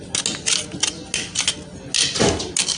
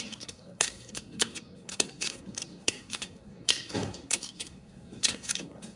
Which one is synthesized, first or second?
second